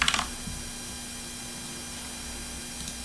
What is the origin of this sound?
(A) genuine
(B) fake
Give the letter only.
A